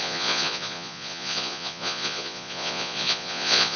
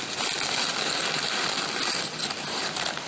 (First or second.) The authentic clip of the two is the second